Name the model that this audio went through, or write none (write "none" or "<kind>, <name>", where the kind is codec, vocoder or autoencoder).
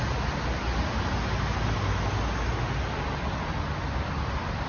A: none